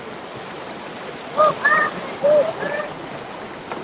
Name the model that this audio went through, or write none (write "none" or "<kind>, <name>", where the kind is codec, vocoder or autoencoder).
none